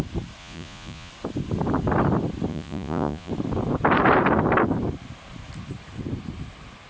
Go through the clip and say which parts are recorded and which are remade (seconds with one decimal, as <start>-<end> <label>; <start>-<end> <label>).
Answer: 0.0-0.4 recorded; 0.4-1.1 remade; 1.1-2.5 recorded; 2.5-3.3 remade; 3.3-6.9 recorded